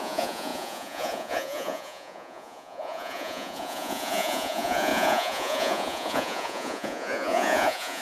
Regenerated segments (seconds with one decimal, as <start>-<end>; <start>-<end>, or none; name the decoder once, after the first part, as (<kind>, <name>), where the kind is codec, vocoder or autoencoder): 0.0-8.0 (vocoder, Vocos)